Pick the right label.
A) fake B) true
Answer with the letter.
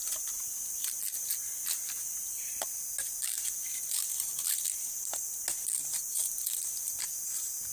B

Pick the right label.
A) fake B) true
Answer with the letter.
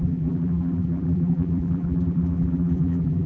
A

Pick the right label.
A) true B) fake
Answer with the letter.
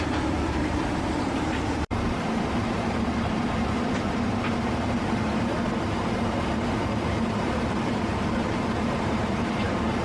B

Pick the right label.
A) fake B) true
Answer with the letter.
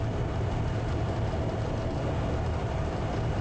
A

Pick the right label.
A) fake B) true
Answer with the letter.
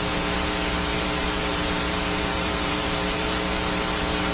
A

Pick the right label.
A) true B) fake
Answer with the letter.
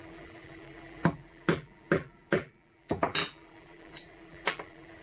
B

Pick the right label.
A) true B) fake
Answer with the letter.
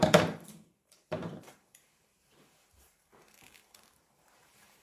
B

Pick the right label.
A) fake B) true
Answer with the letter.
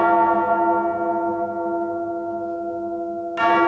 B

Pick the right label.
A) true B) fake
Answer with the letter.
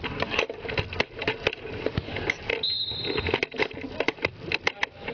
A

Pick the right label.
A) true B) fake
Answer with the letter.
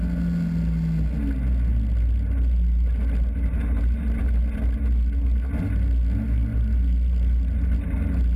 A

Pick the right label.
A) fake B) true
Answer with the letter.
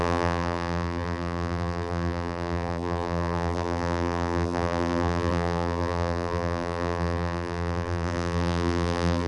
A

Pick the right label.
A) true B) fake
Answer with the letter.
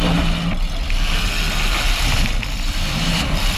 A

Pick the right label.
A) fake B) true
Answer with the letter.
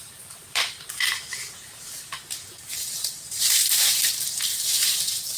A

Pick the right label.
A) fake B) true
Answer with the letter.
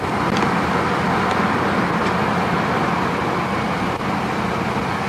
B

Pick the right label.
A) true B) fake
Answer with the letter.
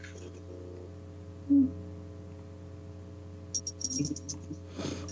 A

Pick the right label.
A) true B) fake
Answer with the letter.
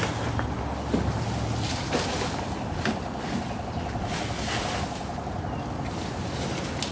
A